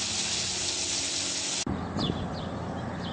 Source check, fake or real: real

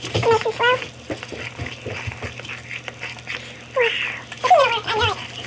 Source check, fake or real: real